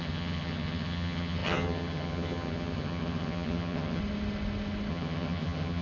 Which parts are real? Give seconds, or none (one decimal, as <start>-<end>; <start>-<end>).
4.0-4.9